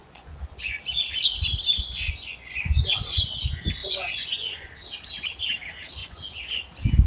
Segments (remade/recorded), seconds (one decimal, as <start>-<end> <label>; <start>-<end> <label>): 0.0-0.8 remade; 0.8-1.7 recorded; 1.7-3.4 remade; 3.4-3.8 recorded; 3.8-4.7 remade; 4.7-6.0 recorded; 6.0-6.6 remade; 6.6-7.1 recorded